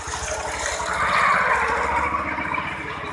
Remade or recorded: recorded